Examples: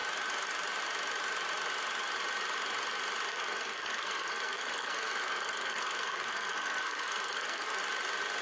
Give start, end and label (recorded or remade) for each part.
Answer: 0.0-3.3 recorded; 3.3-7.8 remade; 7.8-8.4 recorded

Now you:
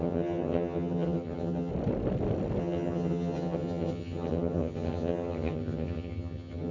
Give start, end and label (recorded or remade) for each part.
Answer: 0.0-1.7 remade; 1.7-2.6 recorded; 2.6-6.7 remade

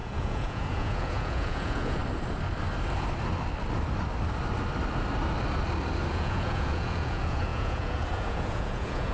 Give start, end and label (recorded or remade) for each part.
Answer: 0.0-2.0 remade; 2.0-6.1 recorded; 6.1-9.1 remade

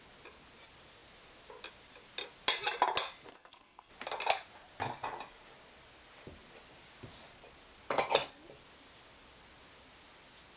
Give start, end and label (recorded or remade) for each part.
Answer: 0.0-3.3 recorded; 3.3-3.9 remade; 3.9-10.6 recorded

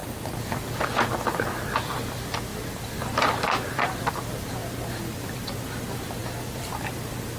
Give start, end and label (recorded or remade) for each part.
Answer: 0.0-0.6 remade; 0.6-2.5 recorded; 2.5-4.1 remade; 4.1-6.2 recorded; 6.2-6.7 remade; 6.7-7.4 recorded

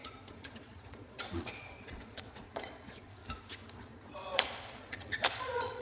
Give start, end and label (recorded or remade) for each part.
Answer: 0.0-3.2 remade; 3.2-3.7 recorded; 3.7-5.8 remade

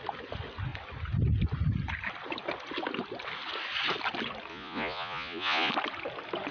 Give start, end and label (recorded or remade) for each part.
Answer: 0.0-4.5 recorded; 4.5-5.7 remade; 5.7-6.5 recorded

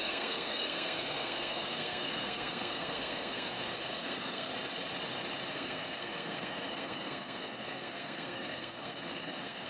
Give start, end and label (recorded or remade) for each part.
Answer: 0.0-4.5 remade; 4.5-5.5 recorded; 5.5-9.7 remade